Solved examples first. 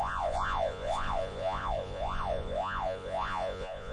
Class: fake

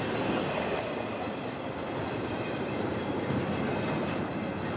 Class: real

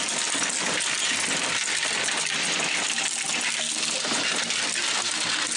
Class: real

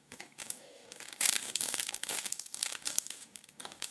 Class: fake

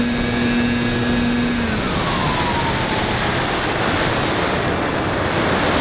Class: real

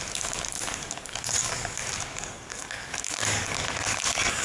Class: fake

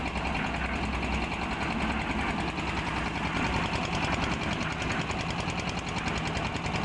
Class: real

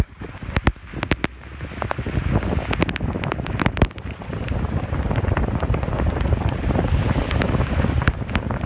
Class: real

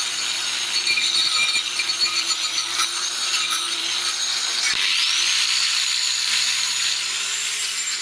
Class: fake